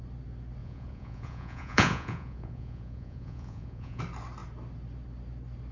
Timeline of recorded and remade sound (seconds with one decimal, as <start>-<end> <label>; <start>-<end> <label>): 0.0-0.6 recorded; 0.6-4.0 remade; 4.0-5.7 recorded